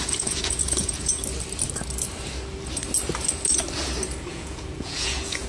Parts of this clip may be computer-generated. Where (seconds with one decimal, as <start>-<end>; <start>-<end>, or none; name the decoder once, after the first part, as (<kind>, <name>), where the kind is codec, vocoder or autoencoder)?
0.0-1.2 (vocoder, Vocos); 4.3-5.5